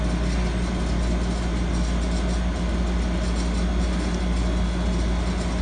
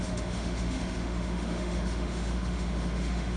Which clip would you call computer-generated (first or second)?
second